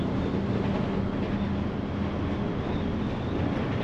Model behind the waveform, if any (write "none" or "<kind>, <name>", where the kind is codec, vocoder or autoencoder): none